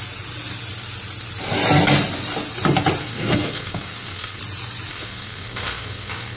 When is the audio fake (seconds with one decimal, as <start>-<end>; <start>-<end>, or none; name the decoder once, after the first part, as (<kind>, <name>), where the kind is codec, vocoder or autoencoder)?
3.0-4.4 (codec, SNAC); 4.9-6.4